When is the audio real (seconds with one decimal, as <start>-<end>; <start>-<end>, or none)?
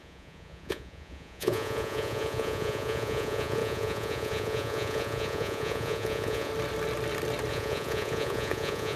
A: 6.5-7.5